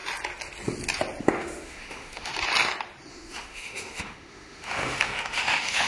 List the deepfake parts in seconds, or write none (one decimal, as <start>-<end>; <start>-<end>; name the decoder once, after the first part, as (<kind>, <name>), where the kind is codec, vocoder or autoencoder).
1.2-2.3 (autoencoder, DAC-VAE); 3.1-5.9